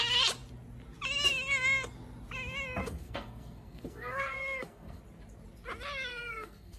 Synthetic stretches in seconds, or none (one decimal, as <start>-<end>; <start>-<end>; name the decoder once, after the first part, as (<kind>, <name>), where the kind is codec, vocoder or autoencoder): 2.8-5.0 (codec, SNAC); 6.1-6.8